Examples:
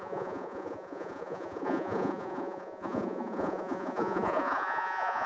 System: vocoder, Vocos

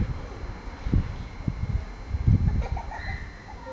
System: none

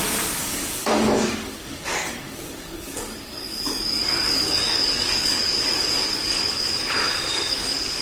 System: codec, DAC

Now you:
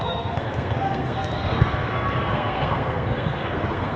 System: codec, SNAC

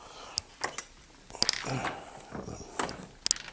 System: none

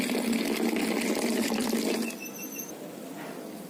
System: none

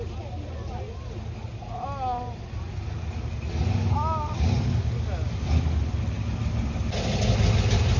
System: none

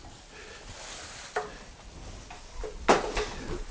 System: none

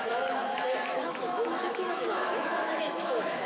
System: autoencoder, DAC-VAE